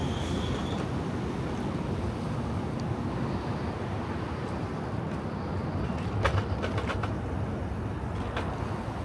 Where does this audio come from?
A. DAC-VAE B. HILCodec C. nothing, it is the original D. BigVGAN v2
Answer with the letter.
C